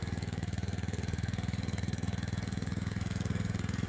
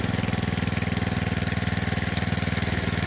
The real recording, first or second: second